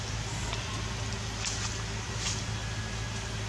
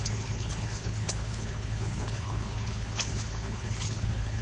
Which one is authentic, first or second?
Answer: first